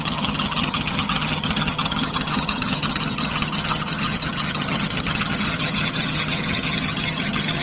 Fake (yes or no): yes